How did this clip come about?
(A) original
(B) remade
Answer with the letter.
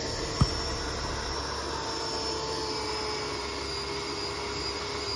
A